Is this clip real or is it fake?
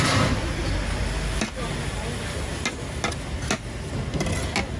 real